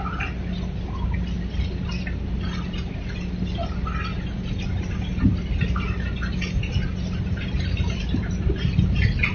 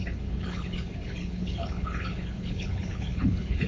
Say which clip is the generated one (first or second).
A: second